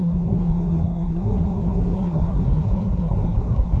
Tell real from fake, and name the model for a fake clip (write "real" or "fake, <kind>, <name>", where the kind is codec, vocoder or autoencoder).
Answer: fake, codec, SNAC